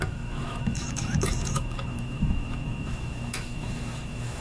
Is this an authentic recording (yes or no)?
no